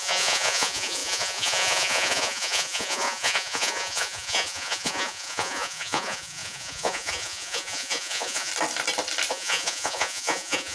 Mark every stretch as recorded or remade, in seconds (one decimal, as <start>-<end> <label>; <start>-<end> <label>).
0.0-8.5 remade; 8.5-9.3 recorded; 9.3-10.7 remade